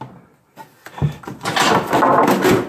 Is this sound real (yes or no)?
yes